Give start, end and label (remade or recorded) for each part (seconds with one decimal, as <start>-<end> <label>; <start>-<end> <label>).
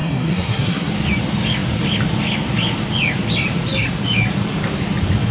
0.0-0.9 remade; 0.9-5.3 recorded